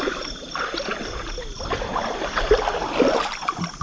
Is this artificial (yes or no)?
no